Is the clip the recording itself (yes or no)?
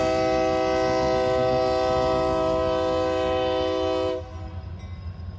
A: yes